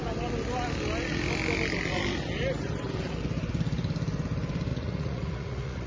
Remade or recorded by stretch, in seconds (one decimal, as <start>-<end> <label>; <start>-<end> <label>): 0.0-4.7 recorded; 4.7-5.9 remade